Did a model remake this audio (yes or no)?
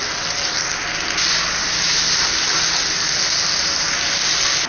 no